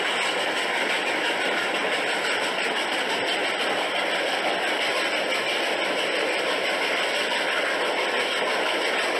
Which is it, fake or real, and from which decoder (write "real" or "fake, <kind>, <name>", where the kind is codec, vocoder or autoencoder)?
real